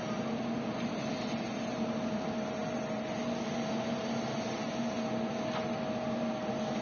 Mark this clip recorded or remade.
recorded